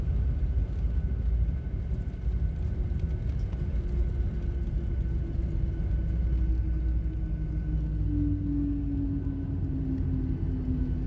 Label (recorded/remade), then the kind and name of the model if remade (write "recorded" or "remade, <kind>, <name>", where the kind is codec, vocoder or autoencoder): recorded